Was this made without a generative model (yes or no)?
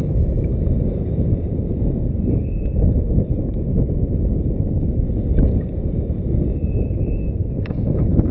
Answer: no